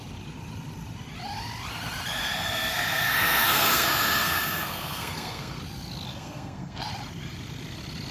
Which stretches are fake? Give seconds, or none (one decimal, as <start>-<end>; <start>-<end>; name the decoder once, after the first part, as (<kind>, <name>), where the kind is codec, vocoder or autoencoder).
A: 2.2-5.6 (codec, SNAC); 6.1-6.9